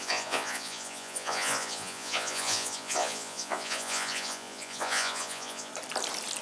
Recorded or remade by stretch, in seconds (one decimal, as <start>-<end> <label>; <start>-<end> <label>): 0.0-5.7 remade; 5.7-6.4 recorded